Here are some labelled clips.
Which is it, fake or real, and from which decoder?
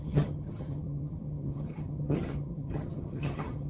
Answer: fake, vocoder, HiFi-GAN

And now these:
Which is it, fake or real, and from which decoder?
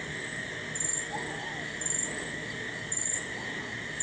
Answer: real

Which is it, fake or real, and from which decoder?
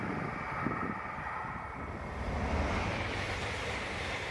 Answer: real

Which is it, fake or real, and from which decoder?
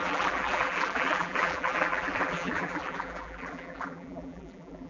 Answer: fake, vocoder, BigVGAN v2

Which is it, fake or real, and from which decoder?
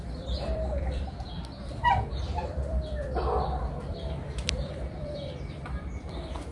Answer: fake, vocoder, BigVGAN v2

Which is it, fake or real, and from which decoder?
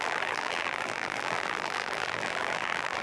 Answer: fake, vocoder, BigVGAN v2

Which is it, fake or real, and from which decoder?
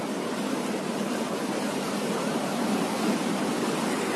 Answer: real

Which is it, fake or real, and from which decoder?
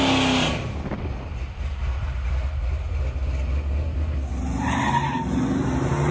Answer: real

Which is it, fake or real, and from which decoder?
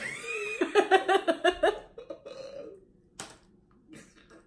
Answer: real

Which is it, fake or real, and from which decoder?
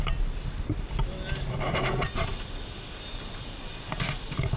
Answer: real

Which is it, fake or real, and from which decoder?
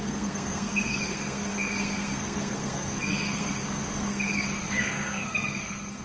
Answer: fake, codec, SNAC